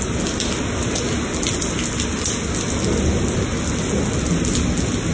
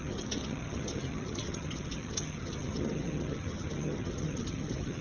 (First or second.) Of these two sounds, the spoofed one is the second